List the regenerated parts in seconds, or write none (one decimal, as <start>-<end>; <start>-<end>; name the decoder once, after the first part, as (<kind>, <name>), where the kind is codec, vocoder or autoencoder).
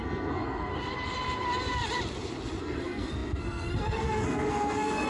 0.0-0.7 (codec, SNAC); 2.6-5.1